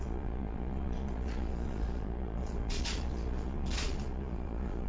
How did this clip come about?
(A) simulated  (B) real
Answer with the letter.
A